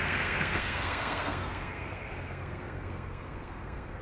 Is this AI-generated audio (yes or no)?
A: yes